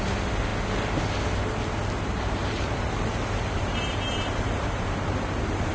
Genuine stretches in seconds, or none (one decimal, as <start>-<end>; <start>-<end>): 0.0-2.4